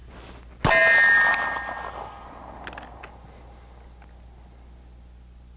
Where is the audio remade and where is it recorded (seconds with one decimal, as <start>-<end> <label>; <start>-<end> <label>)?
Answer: 0.0-5.6 recorded